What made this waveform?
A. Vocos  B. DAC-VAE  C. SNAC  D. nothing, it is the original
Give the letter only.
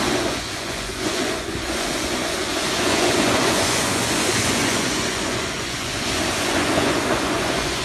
A